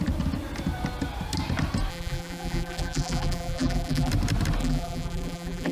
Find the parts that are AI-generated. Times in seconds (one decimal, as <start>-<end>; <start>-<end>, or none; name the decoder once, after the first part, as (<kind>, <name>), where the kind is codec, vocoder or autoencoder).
1.9-4.1 (vocoder, BigVGAN v2); 4.6-5.7